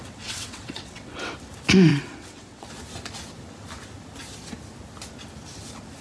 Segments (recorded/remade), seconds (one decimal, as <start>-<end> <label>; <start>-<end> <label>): 0.0-1.3 remade; 1.3-1.9 recorded; 1.9-2.7 remade; 2.7-6.0 recorded